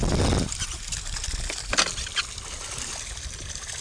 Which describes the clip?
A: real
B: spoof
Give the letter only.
A